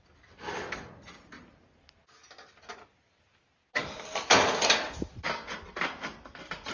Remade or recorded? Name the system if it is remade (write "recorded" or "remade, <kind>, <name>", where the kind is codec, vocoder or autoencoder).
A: recorded